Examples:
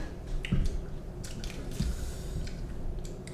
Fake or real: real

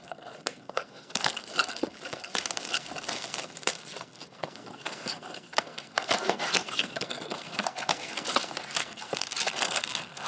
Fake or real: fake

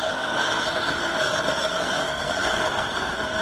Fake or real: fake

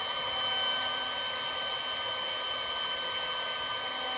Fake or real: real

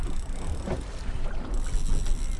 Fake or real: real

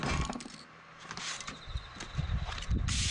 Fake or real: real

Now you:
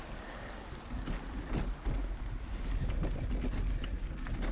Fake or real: real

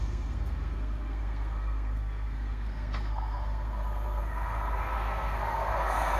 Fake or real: fake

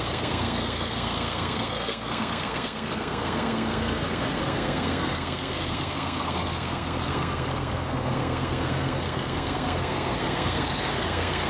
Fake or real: fake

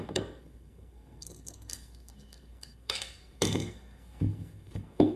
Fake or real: fake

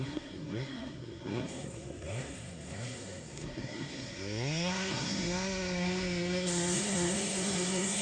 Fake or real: fake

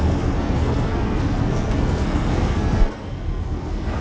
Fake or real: fake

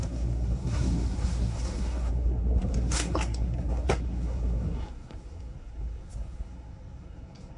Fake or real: fake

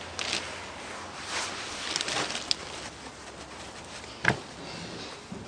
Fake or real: real